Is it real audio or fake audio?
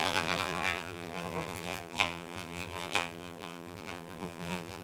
fake